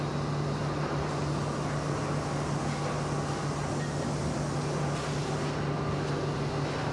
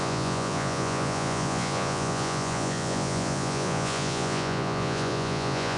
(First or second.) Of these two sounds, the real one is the first